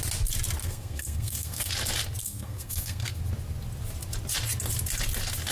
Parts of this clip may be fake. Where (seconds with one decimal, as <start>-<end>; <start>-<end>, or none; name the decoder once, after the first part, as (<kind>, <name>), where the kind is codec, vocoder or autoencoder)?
0.6-1.7 (codec, SNAC); 2.2-3.2